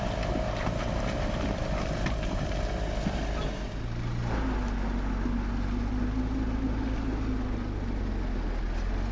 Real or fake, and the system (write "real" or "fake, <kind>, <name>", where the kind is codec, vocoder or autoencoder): real